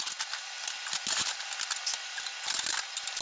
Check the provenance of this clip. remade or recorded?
recorded